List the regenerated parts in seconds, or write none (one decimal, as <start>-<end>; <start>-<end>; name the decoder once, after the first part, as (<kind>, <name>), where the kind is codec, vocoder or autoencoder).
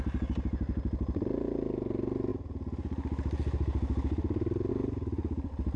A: none